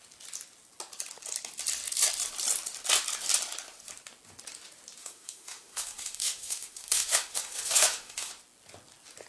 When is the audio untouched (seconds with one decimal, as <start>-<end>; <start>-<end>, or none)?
0.0-5.0; 8.3-9.3